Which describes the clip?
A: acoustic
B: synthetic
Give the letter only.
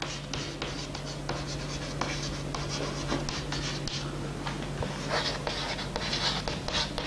A